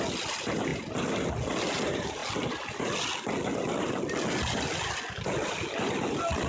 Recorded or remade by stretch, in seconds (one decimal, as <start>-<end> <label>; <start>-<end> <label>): 0.0-6.5 recorded